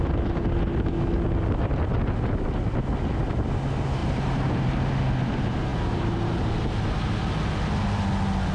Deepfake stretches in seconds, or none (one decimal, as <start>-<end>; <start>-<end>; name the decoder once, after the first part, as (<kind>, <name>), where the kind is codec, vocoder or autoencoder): 4.0-5.0 (vocoder, BigVGAN v2); 5.7-6.4

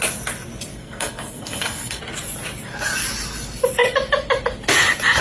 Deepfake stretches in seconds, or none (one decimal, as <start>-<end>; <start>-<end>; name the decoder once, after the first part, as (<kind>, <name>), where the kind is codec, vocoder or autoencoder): 0.7-2.0 (codec, SNAC)

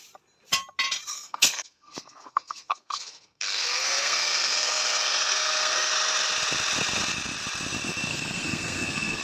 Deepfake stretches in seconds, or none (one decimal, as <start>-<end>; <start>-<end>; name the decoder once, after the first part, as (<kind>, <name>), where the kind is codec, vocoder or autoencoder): 1.1-5.9 (codec, SNAC); 8.1-9.2

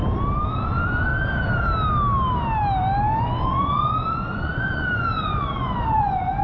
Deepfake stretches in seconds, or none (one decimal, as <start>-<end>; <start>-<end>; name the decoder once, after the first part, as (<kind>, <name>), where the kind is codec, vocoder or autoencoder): 0.5-1.1 (vocoder, Vocos); 3.2-6.4

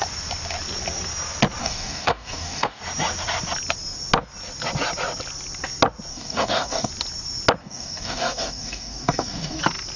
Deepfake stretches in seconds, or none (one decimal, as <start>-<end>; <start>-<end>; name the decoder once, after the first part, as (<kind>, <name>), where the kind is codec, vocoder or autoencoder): 1.6-2.8 (codec, DAC); 6.1-6.9; 7.6-9.6

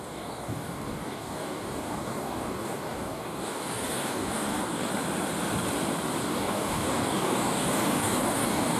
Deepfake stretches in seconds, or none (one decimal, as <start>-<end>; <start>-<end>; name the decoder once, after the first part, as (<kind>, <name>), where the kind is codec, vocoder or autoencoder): 0.0-4.9 (codec, DAC); 6.2-8.8

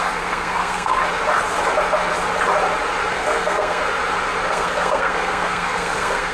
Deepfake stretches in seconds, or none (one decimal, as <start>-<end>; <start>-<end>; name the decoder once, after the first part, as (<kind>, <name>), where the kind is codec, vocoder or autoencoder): 0.0-1.0 (codec, SNAC); 3.1-3.8; 4.5-6.3

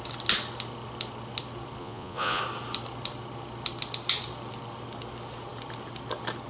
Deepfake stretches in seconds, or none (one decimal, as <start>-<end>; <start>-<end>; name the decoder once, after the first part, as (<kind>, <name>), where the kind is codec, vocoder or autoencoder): 1.8-2.4 (vocoder, Vocos)